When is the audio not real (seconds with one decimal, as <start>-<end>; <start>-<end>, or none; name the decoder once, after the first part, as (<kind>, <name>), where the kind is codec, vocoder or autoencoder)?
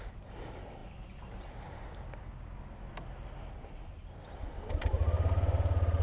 none